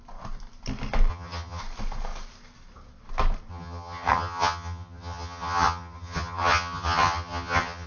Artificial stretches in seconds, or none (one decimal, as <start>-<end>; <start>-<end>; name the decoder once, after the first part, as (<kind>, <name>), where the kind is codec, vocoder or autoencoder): 1.1-1.6 (vocoder, HiFi-GAN); 3.5-7.9